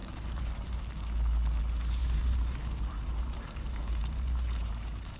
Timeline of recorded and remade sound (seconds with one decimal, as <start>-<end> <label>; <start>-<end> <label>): 0.0-0.8 remade; 0.8-2.0 recorded; 2.0-5.2 remade